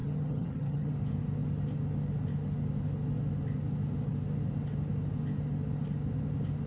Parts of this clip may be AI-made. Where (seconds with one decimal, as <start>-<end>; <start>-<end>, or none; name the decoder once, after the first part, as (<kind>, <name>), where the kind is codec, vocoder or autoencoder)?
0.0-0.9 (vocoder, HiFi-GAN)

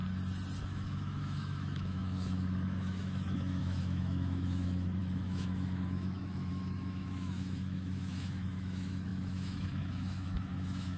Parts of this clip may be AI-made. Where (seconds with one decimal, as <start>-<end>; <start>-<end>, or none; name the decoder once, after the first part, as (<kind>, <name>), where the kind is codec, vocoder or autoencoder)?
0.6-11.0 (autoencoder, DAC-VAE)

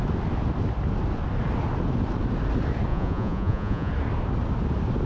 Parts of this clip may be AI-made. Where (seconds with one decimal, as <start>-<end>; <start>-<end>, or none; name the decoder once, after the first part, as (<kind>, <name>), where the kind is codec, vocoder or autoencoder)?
2.9-3.9 (vocoder, Vocos)